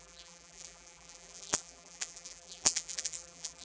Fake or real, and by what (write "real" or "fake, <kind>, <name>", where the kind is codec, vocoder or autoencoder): fake, vocoder, BigVGAN v2